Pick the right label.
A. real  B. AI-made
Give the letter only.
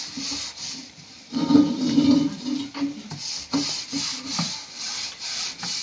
B